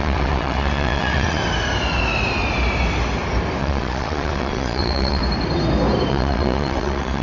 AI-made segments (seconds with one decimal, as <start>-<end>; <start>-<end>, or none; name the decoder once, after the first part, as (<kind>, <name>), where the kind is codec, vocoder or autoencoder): 0.0-1.4 (vocoder, WaveNeXt); 3.6-5.2; 6.1-7.2